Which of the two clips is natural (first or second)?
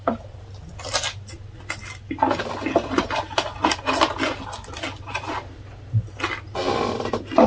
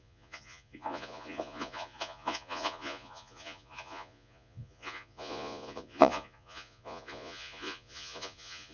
first